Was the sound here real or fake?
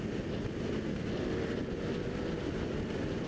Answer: real